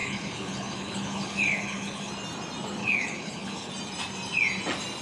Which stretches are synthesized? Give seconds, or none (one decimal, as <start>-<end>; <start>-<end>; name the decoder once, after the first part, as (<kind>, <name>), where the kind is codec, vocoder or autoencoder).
0.0-2.1 (codec, HILCodec); 2.8-3.7